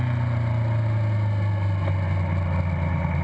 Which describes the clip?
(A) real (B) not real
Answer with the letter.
A